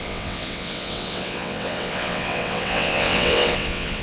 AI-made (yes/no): yes